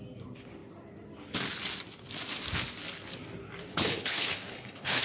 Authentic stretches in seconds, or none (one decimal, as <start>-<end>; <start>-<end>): 0.0-3.7